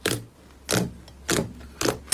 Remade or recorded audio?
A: recorded